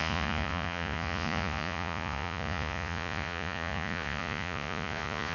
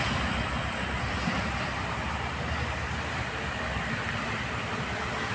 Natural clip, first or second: second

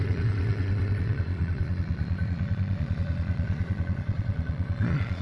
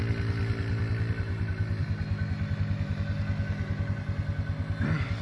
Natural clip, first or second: second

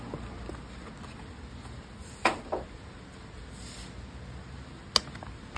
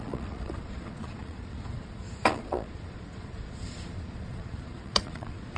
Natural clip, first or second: first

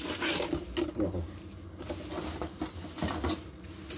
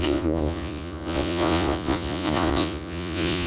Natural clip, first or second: first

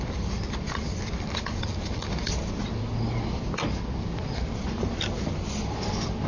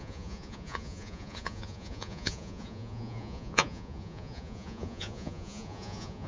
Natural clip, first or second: first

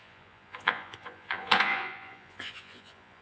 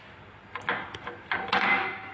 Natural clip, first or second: second